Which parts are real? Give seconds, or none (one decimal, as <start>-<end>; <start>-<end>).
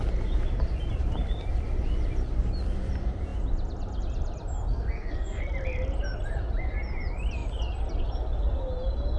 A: 0.0-4.7; 5.4-9.2